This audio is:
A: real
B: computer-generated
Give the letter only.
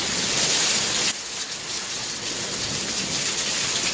A